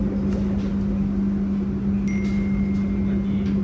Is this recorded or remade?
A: recorded